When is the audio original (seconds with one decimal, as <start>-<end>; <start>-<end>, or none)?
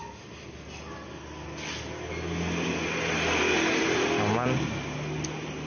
0.0-5.7